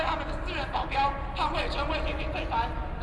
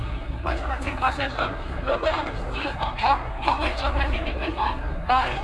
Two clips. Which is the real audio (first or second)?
first